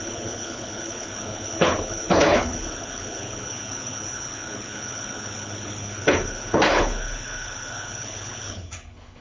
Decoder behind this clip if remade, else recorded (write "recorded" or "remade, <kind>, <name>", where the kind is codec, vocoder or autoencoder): remade, codec, HILCodec